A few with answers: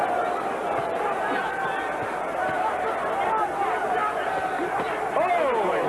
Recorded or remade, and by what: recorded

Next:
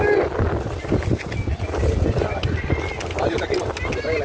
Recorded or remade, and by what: recorded